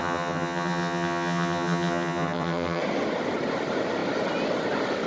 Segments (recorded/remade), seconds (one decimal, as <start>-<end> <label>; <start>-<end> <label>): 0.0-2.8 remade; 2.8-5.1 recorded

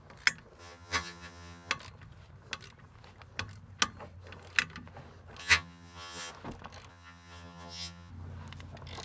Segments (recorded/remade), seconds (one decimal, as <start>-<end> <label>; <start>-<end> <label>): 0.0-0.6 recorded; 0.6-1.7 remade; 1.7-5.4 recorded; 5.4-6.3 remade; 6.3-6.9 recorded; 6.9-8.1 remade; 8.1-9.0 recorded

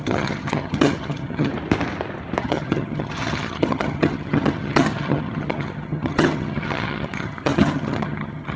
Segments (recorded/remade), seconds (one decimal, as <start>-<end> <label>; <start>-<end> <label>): 0.0-1.5 remade; 1.5-2.4 recorded; 2.4-8.6 remade

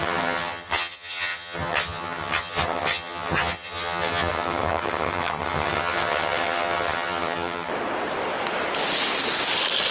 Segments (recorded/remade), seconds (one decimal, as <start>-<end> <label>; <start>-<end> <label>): 0.0-7.7 remade; 7.7-9.9 recorded

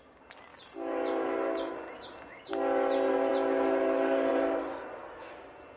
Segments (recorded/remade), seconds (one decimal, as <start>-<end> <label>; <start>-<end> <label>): 0.0-5.8 recorded